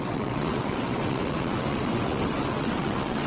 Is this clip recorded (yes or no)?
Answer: no